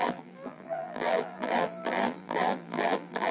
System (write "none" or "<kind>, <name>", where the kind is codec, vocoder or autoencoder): vocoder, BigVGAN v2